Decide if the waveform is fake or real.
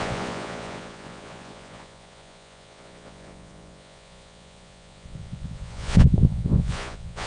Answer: fake